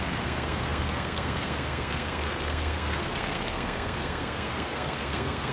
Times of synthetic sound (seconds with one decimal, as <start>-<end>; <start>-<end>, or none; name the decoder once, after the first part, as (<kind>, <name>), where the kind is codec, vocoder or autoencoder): 0.0-5.5 (codec, SNAC)